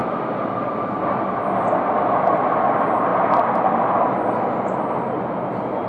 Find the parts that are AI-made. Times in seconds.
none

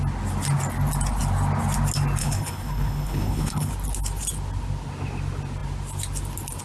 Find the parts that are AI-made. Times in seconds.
2.2-3.7

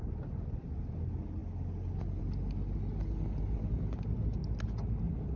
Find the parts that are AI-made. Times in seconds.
none

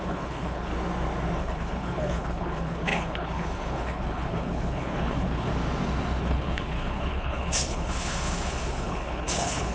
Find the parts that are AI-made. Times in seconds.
0.0-0.7; 1.4-5.5; 6.2-9.7

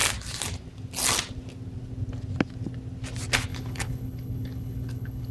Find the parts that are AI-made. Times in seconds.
3.5-5.3

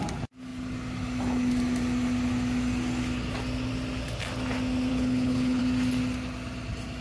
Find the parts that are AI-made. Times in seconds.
4.9-5.6